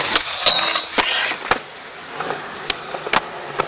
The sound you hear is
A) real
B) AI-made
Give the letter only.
A